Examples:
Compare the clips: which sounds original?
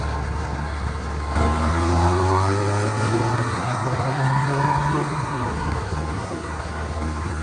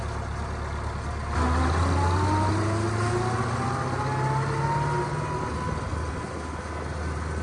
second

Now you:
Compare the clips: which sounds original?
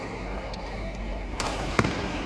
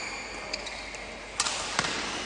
second